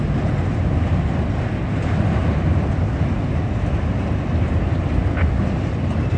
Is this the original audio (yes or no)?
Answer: yes